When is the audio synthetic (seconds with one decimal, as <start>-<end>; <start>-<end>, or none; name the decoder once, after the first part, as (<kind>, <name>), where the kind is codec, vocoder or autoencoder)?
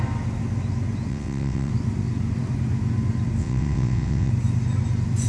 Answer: 1.1-1.7 (vocoder, WaveNeXt); 3.4-4.3